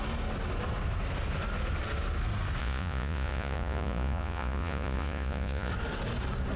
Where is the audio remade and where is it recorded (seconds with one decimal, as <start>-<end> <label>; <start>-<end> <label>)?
0.0-2.6 recorded; 2.6-5.7 remade; 5.7-6.6 recorded